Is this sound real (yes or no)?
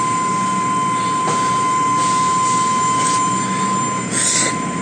yes